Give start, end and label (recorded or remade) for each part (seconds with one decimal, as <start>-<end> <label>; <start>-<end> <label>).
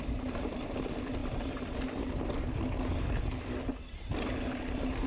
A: 0.0-5.1 recorded